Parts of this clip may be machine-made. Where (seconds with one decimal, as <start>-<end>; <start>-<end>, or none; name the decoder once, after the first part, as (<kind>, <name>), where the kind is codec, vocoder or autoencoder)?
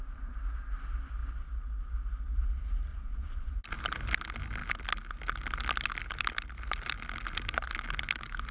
2.9-3.6 (vocoder, Vocos)